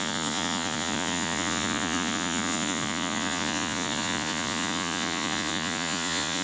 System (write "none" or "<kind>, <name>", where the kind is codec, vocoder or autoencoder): vocoder, Vocos